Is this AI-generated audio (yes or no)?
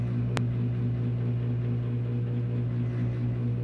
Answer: no